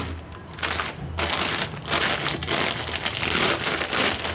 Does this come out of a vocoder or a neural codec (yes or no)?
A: no